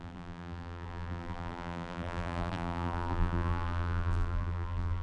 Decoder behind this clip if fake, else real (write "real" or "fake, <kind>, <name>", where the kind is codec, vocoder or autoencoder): fake, vocoder, BigVGAN v2